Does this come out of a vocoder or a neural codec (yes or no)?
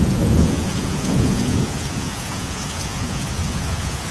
yes